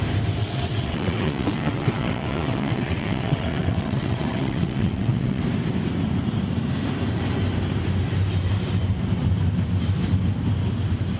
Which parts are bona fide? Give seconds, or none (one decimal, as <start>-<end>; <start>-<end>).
0.0-0.4; 5.4-11.2